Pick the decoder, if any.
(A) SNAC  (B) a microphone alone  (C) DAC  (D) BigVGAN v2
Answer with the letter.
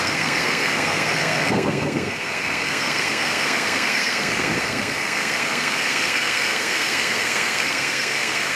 A